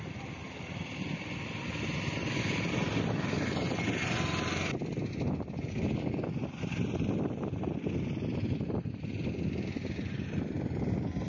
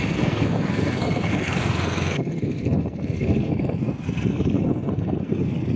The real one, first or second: first